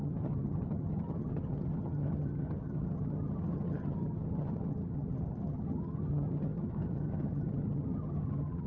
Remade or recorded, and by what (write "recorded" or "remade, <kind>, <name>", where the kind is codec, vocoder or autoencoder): remade, vocoder, HiFi-GAN